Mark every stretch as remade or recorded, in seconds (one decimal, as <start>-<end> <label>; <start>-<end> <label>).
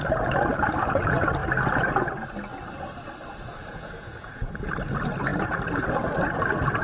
0.0-3.6 recorded; 3.6-4.5 remade; 4.5-6.8 recorded